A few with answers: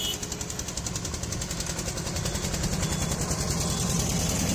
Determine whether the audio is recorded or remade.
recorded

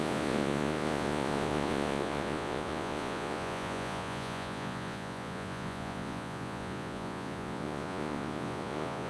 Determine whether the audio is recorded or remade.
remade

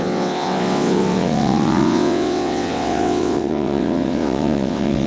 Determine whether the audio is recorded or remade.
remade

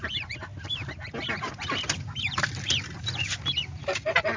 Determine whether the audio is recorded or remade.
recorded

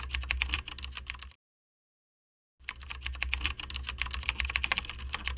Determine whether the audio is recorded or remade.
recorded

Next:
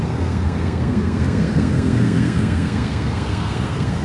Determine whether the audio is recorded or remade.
remade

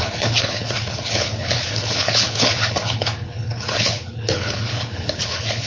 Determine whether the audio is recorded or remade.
remade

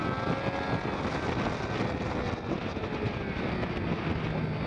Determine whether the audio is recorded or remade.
recorded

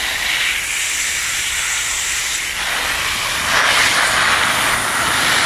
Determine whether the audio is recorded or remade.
recorded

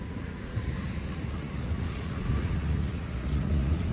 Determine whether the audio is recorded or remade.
remade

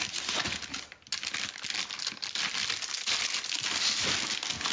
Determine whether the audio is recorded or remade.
recorded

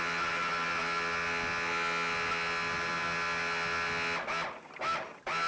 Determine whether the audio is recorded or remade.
recorded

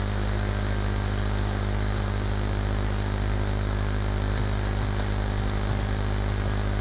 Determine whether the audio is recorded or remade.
recorded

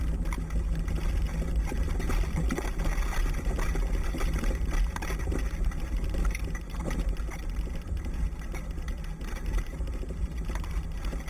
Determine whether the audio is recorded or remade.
recorded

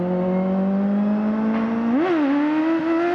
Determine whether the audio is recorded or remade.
recorded